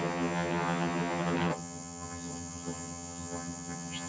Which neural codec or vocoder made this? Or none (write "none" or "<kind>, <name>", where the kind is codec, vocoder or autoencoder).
vocoder, HiFi-GAN